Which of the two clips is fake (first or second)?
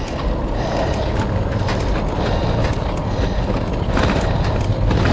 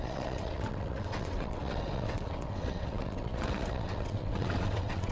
second